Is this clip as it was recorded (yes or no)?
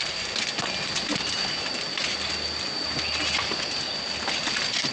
yes